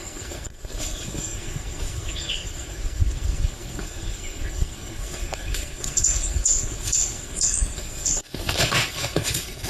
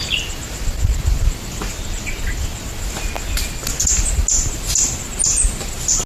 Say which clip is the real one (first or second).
second